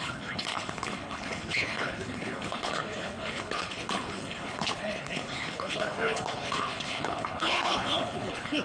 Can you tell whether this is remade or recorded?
remade